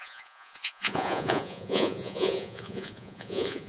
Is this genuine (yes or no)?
no